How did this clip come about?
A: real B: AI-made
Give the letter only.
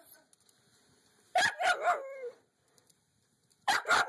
A